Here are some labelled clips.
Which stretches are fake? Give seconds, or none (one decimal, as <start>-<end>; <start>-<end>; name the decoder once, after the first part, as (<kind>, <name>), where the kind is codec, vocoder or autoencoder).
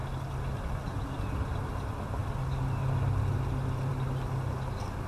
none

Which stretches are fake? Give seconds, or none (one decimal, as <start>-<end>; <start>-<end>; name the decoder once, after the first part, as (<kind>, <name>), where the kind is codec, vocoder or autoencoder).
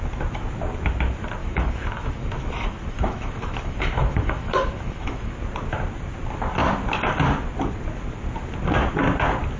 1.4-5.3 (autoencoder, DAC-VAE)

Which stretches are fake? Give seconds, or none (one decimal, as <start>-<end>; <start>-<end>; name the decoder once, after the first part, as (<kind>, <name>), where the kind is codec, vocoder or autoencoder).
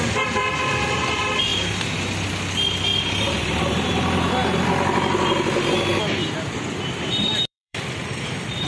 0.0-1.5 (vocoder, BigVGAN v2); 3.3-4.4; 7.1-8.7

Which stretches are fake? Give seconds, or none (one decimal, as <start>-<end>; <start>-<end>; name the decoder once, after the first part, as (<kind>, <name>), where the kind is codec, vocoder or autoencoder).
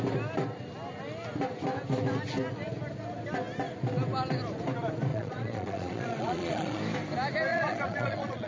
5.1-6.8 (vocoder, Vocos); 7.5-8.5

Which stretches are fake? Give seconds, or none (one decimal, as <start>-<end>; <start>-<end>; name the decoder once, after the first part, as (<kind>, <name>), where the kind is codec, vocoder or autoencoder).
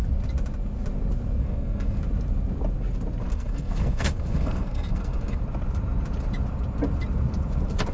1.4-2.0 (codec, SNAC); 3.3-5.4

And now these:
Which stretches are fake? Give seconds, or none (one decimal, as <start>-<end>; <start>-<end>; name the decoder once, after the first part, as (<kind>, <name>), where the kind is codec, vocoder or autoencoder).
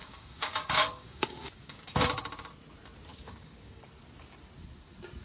0.0-1.9 (codec, DAC); 3.1-3.9